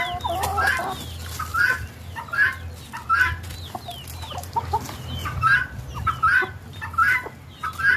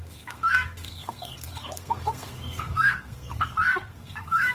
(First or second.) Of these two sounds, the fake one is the second